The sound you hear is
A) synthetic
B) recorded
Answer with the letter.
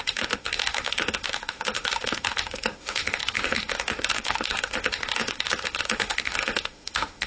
A